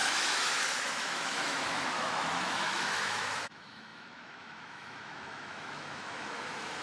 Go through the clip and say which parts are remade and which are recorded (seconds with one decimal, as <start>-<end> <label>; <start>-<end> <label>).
0.0-6.8 remade